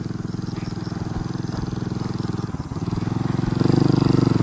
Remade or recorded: recorded